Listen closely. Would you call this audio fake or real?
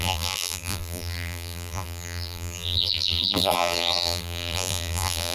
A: fake